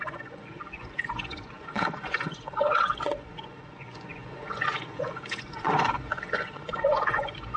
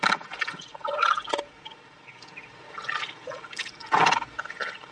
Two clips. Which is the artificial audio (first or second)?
first